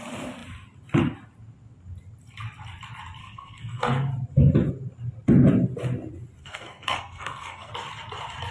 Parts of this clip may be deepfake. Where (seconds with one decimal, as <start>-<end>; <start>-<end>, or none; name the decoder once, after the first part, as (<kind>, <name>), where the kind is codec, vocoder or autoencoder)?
3.2-4.1 (codec, SNAC); 6.4-7.7